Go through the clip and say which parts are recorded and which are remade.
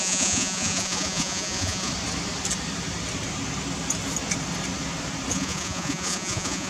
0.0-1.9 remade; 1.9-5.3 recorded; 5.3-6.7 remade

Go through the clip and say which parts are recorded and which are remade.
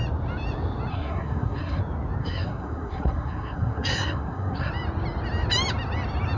0.0-0.9 recorded; 0.9-1.8 remade; 1.8-2.2 recorded; 2.2-4.7 remade; 4.7-6.4 recorded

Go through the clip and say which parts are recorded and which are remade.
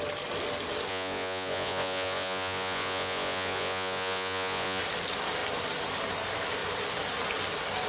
0.0-0.9 recorded; 0.9-4.8 remade; 4.8-7.9 recorded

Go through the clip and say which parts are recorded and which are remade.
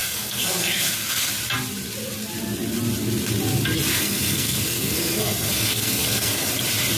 0.0-1.3 remade; 1.3-3.9 recorded; 3.9-6.5 remade; 6.5-7.0 recorded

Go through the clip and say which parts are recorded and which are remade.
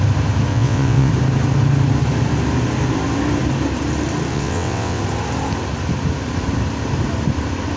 0.0-0.5 recorded; 0.5-1.1 remade; 1.1-4.3 recorded; 4.3-5.0 remade; 5.0-7.8 recorded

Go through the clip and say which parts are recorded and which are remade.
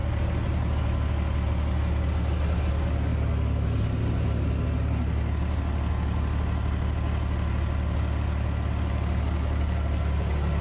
0.0-10.6 recorded